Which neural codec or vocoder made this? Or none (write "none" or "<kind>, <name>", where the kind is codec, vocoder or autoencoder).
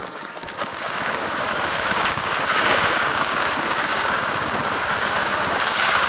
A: codec, DAC